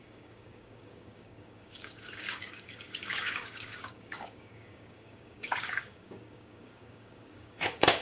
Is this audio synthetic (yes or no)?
yes